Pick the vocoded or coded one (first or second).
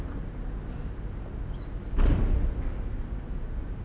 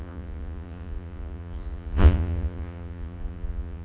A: second